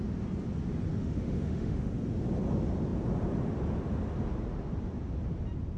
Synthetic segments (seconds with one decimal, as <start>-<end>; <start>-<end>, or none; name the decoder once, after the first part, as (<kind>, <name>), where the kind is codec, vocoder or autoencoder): 0.9-1.9 (autoencoder, DAC-VAE)